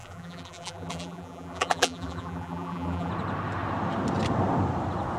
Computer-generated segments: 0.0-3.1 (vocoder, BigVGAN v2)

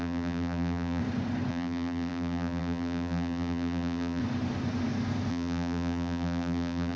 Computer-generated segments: 0.0-1.0 (vocoder, BigVGAN v2); 1.5-4.2; 5.3-7.0

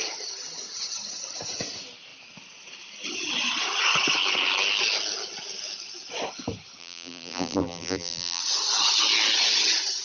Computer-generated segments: 6.8-8.4 (vocoder, BigVGAN v2)